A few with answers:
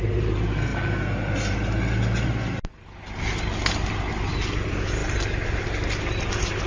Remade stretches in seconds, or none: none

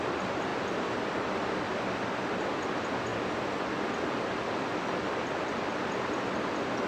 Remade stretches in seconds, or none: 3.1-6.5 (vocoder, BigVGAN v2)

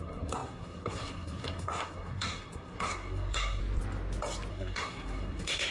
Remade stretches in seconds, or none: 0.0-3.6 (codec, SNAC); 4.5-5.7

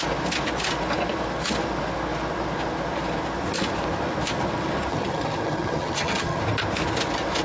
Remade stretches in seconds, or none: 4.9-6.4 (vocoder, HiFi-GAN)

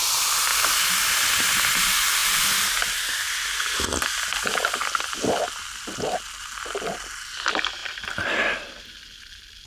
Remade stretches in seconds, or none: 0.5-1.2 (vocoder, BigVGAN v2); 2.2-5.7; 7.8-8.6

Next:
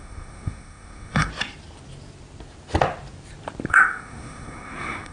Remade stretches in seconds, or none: 0.0-1.3 (codec, SNAC); 3.7-5.1

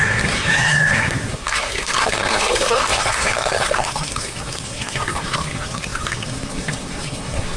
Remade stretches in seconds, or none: 0.0-7.6 (codec, SNAC)